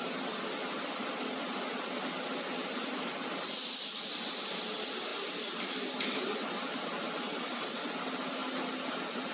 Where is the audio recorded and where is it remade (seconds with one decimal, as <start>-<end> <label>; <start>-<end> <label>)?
0.0-9.3 recorded